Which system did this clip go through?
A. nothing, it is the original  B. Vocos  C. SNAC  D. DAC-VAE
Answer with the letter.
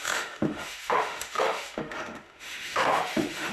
D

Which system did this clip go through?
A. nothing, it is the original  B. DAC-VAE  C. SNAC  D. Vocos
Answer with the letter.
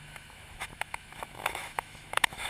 B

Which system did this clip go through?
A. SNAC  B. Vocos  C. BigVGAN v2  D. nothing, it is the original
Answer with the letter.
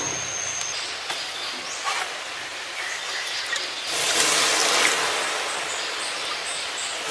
D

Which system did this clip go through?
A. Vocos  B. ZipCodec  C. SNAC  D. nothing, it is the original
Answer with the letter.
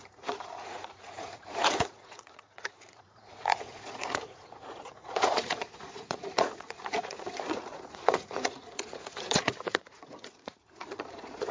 A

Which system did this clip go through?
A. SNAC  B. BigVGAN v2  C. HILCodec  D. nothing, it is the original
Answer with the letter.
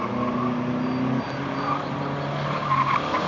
D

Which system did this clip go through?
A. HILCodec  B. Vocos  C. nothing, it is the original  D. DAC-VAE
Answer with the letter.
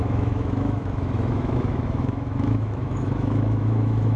D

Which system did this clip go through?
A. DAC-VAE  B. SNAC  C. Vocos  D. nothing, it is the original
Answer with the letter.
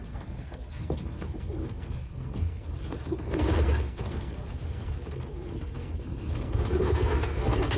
B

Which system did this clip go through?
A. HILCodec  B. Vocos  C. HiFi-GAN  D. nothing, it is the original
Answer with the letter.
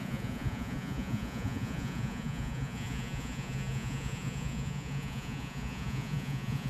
B